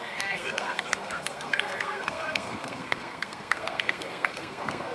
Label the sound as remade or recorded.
remade